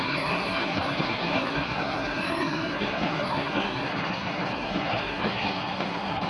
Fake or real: fake